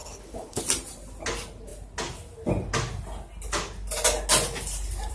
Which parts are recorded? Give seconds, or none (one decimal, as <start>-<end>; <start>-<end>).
0.6-5.1